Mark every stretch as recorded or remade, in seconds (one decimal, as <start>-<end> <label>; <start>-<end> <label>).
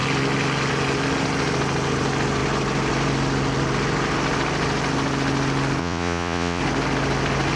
0.0-5.8 recorded; 5.8-6.6 remade; 6.6-7.6 recorded